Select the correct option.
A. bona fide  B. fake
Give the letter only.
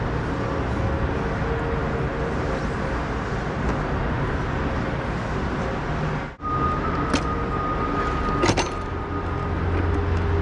A